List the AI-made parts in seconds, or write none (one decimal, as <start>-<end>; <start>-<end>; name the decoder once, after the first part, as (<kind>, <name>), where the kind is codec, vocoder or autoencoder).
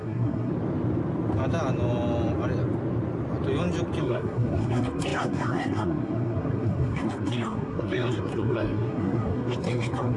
0.0-0.5 (codec, SNAC); 4.0-10.2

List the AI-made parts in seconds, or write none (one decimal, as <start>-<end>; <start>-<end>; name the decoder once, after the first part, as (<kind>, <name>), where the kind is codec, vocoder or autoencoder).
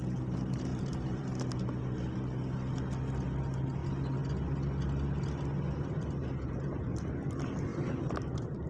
0.7-1.3 (vocoder, BigVGAN v2); 7.7-8.7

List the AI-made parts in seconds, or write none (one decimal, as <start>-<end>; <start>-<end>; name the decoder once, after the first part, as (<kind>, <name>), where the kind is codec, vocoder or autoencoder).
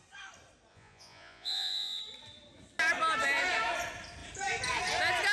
0.7-2.0 (vocoder, Vocos)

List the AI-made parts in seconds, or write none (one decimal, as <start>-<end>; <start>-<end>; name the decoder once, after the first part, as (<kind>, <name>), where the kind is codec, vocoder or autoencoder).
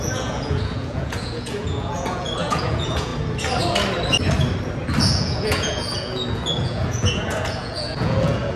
0.0-3.1 (vocoder, Vocos); 5.1-8.6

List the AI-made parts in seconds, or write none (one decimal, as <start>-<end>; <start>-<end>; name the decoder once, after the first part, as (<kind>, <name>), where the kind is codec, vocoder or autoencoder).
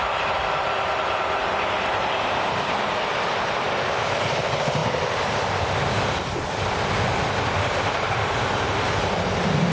0.0-1.4 (vocoder, BigVGAN v2); 4.0-4.8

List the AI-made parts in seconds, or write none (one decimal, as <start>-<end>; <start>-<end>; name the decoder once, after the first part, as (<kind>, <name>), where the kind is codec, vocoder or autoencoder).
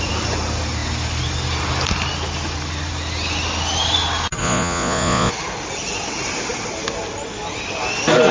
4.4-5.3 (vocoder, Vocos)